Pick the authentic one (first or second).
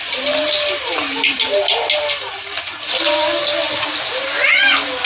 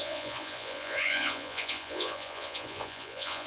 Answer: first